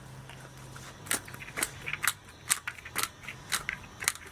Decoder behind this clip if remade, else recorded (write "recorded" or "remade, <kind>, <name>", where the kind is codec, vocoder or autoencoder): recorded